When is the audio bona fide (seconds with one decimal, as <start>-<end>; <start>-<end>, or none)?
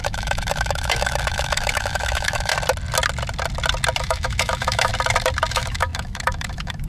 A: 2.5-4.0; 4.9-5.5